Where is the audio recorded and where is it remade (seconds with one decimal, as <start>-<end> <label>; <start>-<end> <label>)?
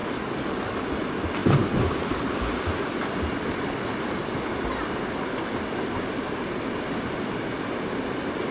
0.0-0.8 remade; 0.8-8.5 recorded